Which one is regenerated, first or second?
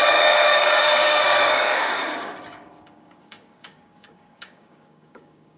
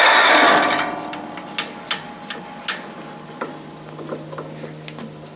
first